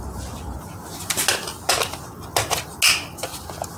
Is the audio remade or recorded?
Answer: recorded